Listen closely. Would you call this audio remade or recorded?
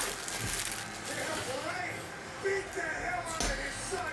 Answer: recorded